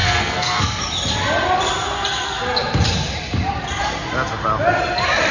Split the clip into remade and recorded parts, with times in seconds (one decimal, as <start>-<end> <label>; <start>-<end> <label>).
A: 0.0-0.8 remade; 0.8-5.3 recorded